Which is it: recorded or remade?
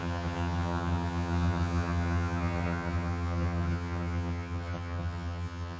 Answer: remade